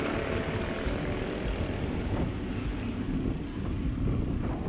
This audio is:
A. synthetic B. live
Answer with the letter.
B